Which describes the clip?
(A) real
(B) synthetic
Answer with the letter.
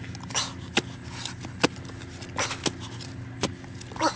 A